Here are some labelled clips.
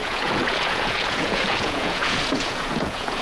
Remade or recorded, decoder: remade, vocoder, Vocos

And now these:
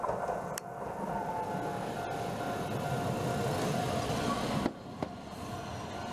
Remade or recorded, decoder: recorded